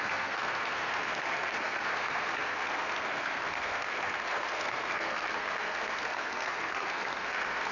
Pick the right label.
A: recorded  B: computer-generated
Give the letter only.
B